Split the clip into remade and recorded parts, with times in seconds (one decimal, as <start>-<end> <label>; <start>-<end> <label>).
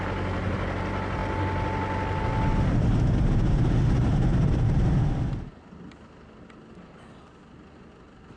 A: 0.0-8.4 recorded